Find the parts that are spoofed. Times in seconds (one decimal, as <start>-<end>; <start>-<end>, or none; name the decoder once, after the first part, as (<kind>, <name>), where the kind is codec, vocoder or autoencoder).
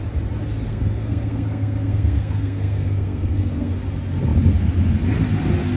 0.7-3.7 (codec, SNAC)